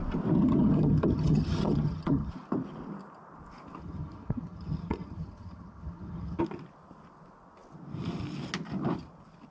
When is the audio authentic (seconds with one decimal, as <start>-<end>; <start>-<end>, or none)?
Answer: 0.0-0.4; 2.3-3.8; 6.4-9.5